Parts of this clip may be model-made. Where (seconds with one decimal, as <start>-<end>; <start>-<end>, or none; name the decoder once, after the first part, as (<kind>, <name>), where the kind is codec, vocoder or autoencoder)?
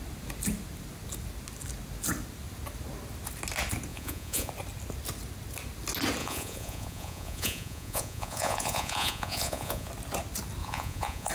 3.9-4.5 (vocoder, Vocos); 6.2-9.9; 10.6-11.3